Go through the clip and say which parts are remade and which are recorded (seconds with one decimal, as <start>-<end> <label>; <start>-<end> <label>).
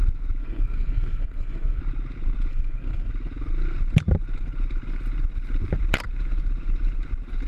0.0-0.4 recorded; 0.4-1.8 remade; 1.8-2.5 recorded; 2.5-3.1 remade; 3.1-7.5 recorded